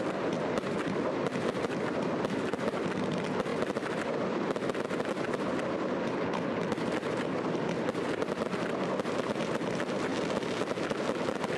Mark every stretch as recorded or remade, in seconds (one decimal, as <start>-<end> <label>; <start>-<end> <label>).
0.0-11.6 recorded